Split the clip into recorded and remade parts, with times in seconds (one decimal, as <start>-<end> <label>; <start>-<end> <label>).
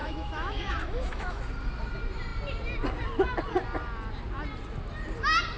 0.0-1.4 remade; 1.4-5.6 recorded